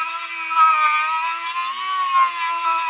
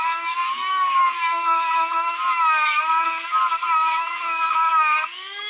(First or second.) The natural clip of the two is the first